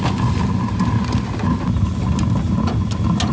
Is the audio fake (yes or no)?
no